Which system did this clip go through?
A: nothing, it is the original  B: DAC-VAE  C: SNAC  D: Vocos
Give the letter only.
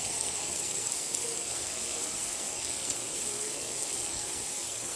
C